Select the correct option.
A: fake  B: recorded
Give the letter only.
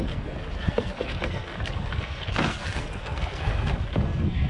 A